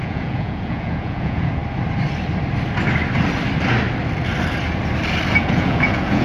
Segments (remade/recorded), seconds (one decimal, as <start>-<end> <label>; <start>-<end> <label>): 0.0-1.6 remade; 1.6-5.3 recorded; 5.3-6.2 remade